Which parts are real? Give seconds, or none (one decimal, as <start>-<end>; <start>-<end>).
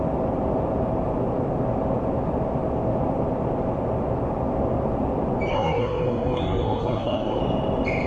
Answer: 0.0-5.5; 7.4-8.1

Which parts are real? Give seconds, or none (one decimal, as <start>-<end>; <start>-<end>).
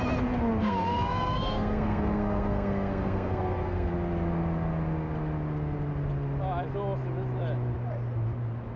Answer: 0.0-0.6; 3.9-8.8